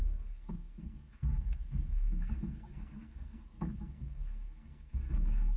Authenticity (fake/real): fake